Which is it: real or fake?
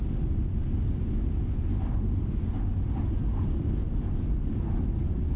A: real